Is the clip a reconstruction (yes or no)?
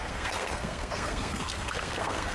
yes